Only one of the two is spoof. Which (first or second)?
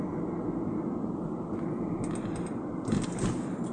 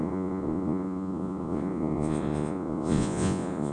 second